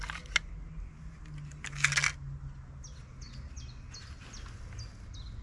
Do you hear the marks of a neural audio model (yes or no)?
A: no